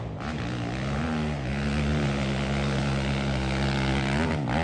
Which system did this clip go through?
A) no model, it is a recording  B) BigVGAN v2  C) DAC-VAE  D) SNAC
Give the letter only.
A